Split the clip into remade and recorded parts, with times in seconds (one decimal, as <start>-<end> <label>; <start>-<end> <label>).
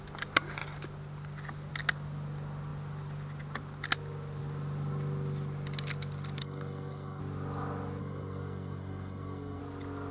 0.0-6.4 recorded; 6.4-7.2 remade; 7.2-8.0 recorded; 8.0-9.6 remade; 9.6-10.1 recorded